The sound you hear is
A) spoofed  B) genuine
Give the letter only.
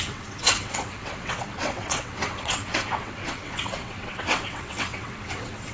A